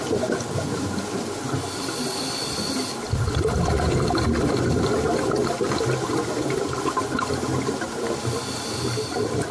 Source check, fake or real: real